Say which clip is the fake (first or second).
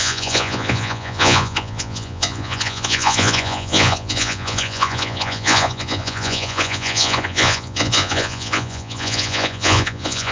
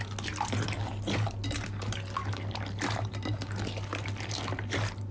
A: first